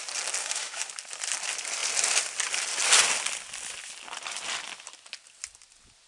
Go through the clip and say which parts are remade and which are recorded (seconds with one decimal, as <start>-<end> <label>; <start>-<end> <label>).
0.0-0.4 recorded; 0.4-0.9 remade; 0.9-6.1 recorded